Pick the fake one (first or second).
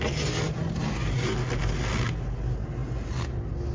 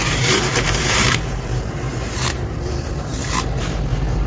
second